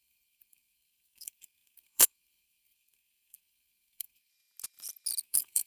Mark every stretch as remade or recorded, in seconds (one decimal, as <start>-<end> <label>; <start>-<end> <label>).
0.0-4.3 remade; 4.3-5.2 recorded; 5.2-5.7 remade